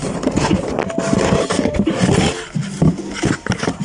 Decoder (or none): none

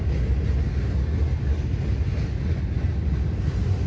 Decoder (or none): none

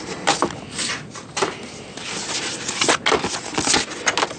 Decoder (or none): none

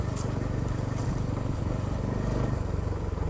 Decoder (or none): none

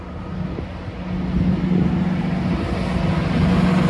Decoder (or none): none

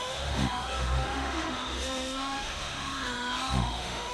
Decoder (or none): autoencoder, DAC-VAE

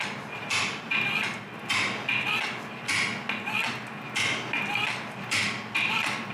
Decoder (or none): none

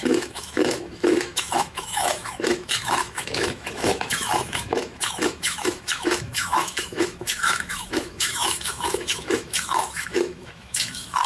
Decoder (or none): autoencoder, DAC-VAE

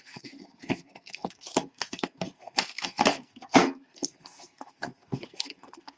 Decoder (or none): codec, SNAC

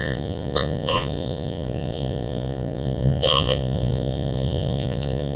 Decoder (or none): vocoder, Vocos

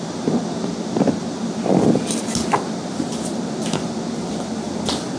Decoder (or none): none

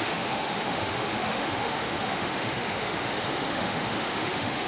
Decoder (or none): autoencoder, DAC-VAE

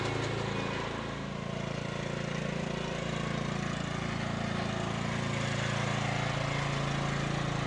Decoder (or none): none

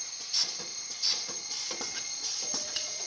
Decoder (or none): vocoder, Vocos